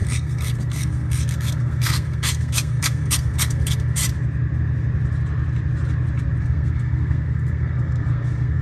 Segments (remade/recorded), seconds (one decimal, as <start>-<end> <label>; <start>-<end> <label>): 0.0-4.0 remade; 4.0-6.4 recorded; 6.4-8.6 remade